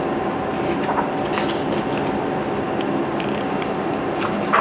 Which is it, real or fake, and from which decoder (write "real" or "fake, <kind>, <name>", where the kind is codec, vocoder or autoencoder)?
real